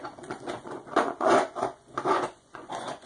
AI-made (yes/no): yes